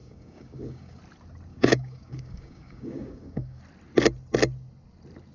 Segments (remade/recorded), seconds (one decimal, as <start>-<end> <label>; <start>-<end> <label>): 0.0-1.0 remade; 1.0-1.5 recorded; 1.5-3.6 remade; 3.6-5.3 recorded